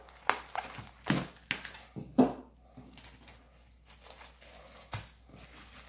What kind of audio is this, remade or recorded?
recorded